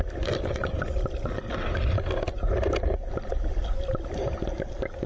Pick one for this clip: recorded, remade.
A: recorded